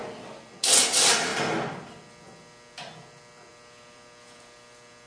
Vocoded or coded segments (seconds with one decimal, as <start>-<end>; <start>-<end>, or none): none